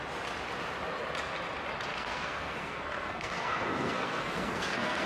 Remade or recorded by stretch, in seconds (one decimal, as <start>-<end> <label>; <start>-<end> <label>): 0.0-1.9 recorded; 1.9-5.1 remade